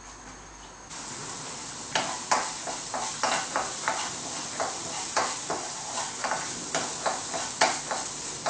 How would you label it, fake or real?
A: real